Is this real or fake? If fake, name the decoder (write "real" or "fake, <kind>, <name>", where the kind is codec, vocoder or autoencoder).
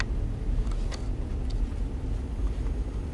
real